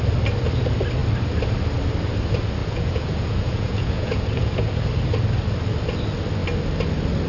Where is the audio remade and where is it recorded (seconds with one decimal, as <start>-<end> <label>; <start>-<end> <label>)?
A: 0.0-2.6 recorded; 2.6-4.9 remade; 4.9-7.3 recorded